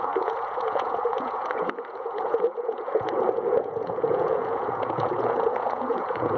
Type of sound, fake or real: fake